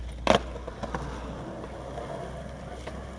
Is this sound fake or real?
real